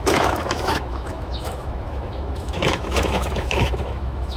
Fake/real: fake